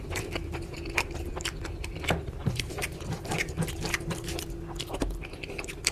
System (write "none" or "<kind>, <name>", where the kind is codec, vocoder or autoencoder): none